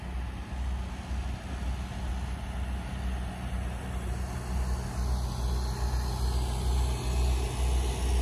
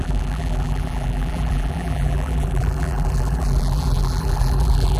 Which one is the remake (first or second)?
second